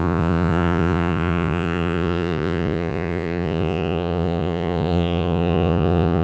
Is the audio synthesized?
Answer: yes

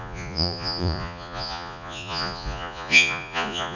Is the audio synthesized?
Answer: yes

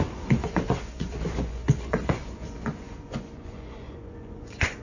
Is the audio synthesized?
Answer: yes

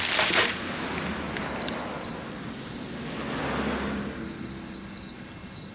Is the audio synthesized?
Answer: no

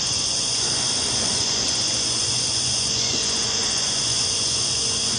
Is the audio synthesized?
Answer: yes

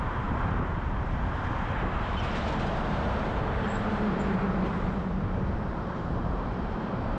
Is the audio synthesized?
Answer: yes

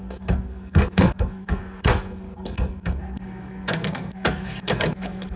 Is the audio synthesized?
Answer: yes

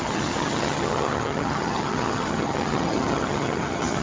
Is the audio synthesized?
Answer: yes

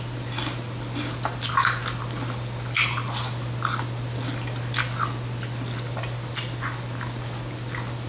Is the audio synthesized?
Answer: no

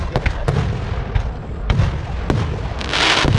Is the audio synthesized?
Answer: no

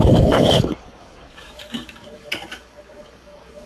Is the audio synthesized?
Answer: yes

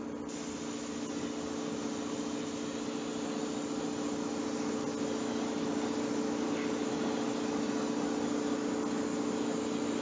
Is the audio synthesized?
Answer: no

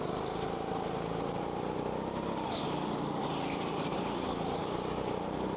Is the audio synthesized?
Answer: no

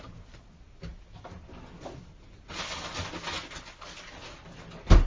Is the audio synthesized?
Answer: no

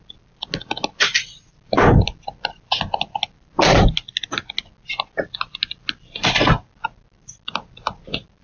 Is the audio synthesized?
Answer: no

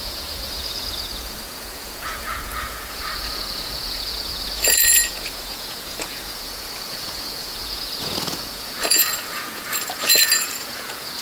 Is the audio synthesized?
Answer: yes